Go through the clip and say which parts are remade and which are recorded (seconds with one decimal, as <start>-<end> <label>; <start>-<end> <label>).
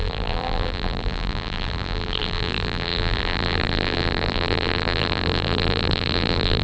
0.0-6.6 remade